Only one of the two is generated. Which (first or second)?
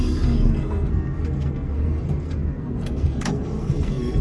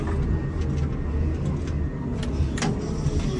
first